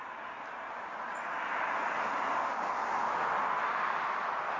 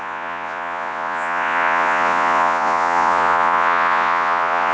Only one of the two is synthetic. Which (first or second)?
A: second